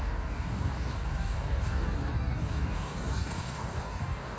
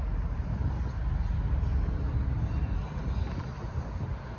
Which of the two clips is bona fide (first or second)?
second